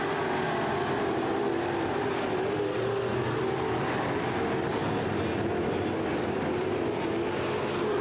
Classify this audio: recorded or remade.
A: recorded